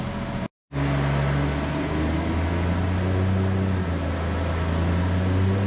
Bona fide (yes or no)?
yes